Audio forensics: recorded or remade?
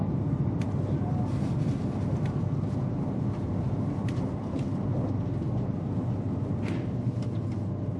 recorded